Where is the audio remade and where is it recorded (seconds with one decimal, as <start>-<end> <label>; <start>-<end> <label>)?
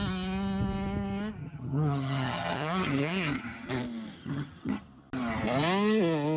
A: 0.0-1.4 recorded; 1.4-3.7 remade; 3.7-4.2 recorded; 4.2-4.8 remade; 4.8-6.4 recorded